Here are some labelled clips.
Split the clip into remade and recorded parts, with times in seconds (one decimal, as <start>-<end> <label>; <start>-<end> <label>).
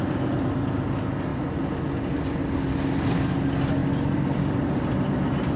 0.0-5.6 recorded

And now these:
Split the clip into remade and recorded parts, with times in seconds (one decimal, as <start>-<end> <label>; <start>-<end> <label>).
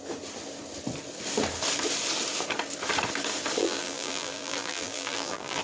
0.0-3.6 recorded; 3.6-5.6 remade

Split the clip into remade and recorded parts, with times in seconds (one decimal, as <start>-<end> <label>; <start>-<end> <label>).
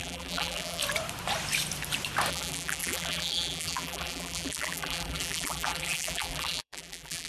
0.0-0.8 remade; 0.8-2.3 recorded; 2.3-7.3 remade